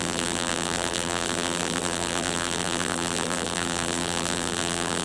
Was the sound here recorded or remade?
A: remade